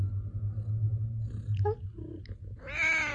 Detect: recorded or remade recorded